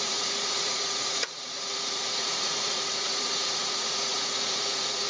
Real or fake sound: fake